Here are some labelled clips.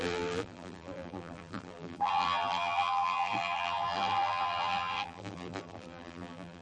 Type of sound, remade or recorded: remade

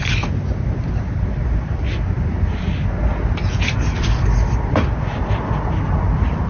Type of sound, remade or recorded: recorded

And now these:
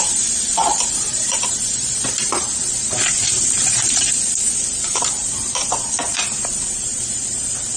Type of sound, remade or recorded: remade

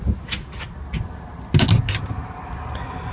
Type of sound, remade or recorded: recorded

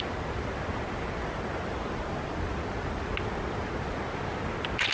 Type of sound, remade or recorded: recorded